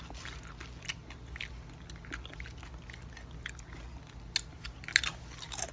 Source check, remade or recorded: recorded